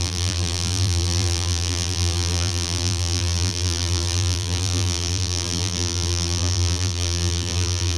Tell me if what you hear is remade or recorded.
remade